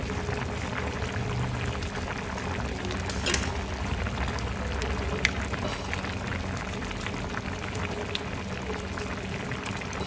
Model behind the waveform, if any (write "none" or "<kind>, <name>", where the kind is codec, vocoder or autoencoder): none